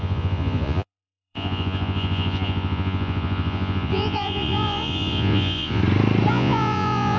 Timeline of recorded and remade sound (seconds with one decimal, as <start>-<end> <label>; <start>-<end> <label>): 0.0-5.8 remade; 5.8-6.3 recorded; 6.3-7.2 remade